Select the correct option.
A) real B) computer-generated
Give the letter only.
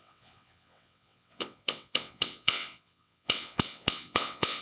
B